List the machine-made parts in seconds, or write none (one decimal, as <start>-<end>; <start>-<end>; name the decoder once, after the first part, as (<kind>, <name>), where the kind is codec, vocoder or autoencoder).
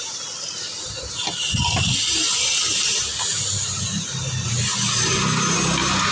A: none